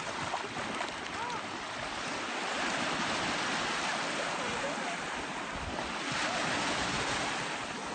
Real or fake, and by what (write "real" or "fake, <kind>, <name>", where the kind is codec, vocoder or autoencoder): real